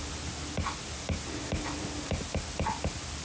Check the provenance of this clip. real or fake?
real